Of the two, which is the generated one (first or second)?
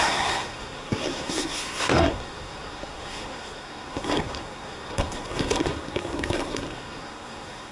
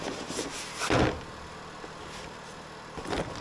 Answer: first